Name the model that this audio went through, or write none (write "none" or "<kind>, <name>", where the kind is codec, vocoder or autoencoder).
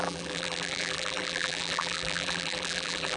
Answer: vocoder, BigVGAN v2